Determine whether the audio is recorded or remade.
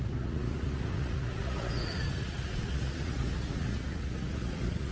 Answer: remade